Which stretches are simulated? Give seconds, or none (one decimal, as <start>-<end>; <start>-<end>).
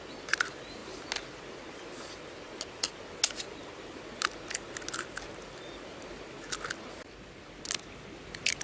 none